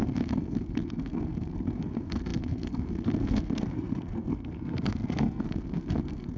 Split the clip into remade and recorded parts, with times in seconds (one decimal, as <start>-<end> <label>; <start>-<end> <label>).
0.0-6.4 remade